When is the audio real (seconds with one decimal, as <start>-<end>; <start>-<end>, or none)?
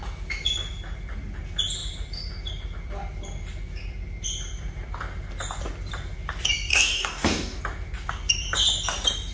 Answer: 0.0-6.7; 7.6-9.3